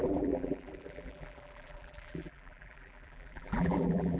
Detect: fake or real fake